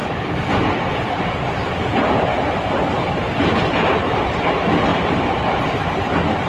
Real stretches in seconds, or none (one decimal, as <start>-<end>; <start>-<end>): 0.0-3.9